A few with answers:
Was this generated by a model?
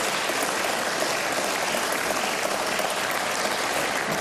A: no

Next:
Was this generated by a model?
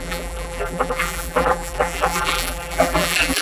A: yes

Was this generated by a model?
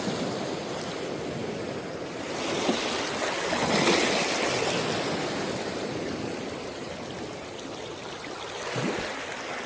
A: no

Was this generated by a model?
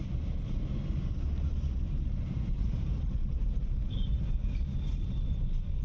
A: yes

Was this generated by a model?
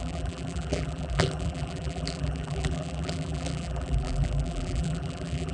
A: yes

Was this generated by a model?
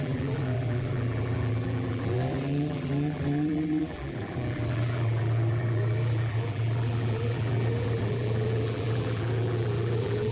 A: yes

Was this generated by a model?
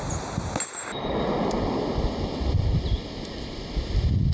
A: no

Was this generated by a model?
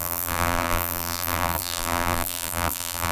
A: yes